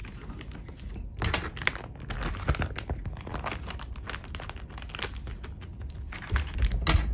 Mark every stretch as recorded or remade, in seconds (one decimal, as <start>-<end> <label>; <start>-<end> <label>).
0.0-7.1 recorded